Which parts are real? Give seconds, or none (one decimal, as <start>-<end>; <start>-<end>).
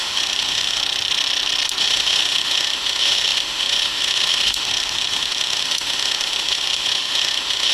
0.8-1.8